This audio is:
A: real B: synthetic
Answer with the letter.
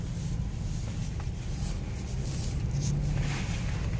A